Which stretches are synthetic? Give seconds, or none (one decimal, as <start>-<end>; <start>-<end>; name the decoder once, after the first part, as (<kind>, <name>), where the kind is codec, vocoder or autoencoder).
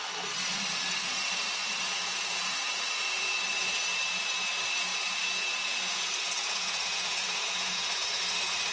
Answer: 1.6-3.4 (vocoder, Vocos); 4.9-8.2